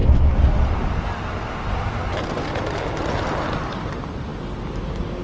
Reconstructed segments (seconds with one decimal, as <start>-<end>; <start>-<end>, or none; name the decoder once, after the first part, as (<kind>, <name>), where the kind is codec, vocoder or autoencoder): none